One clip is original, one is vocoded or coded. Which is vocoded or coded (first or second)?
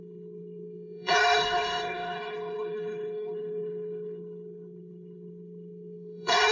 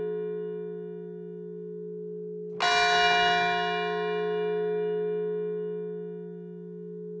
first